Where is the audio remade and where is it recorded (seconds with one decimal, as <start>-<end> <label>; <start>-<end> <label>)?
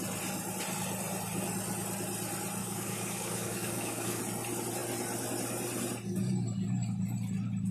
0.0-2.6 recorded; 2.6-4.2 remade; 4.2-7.7 recorded